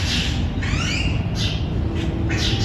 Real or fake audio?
real